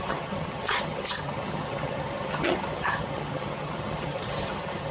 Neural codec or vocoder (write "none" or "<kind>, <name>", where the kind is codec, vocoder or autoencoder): vocoder, HiFi-GAN